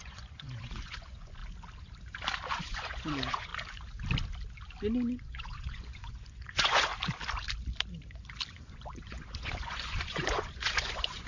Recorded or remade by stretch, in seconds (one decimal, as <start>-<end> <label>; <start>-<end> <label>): 0.0-1.4 remade; 1.4-2.6 recorded; 2.6-3.5 remade; 3.5-5.2 recorded; 5.2-6.9 remade; 6.9-8.5 recorded; 8.5-11.3 remade